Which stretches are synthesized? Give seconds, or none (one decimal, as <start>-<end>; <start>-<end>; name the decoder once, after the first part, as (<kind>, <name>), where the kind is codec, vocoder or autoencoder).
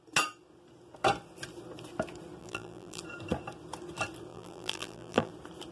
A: 2.4-3.0 (vocoder, BigVGAN v2); 4.3-5.3